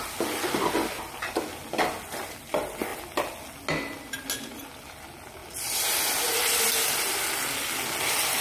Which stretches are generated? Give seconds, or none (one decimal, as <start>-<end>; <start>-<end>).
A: none